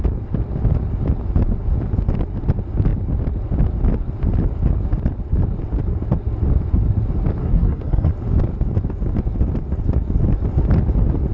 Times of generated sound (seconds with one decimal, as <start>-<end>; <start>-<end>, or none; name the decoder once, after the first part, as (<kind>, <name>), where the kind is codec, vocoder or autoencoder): 7.4-8.1 (codec, SNAC)